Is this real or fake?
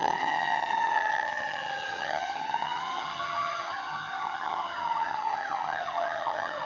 fake